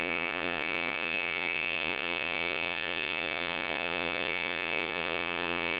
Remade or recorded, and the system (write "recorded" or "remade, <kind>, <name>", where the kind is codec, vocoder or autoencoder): remade, vocoder, Vocos